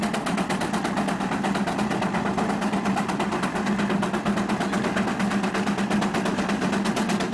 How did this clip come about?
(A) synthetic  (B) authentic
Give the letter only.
B